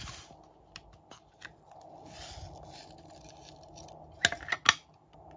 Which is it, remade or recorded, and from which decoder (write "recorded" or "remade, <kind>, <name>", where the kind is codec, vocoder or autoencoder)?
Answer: recorded